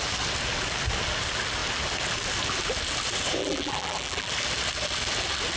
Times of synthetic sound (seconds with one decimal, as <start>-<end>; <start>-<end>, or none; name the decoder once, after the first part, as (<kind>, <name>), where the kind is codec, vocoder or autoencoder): 3.4-4.3 (vocoder, BigVGAN v2)